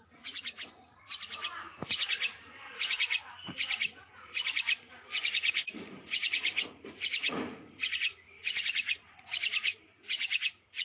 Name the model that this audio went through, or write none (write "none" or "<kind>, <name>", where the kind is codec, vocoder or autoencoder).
vocoder, Vocos